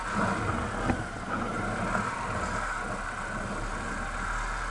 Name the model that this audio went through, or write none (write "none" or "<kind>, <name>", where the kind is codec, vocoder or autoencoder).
none